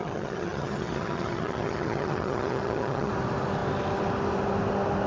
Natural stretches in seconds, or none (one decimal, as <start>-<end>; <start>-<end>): 3.1-5.1